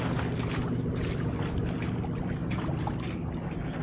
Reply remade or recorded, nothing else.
recorded